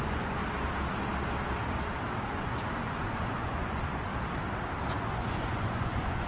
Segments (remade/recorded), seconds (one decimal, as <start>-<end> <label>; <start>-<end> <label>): 0.0-0.4 remade; 0.4-2.3 recorded; 2.3-4.1 remade; 4.1-4.9 recorded; 4.9-6.3 remade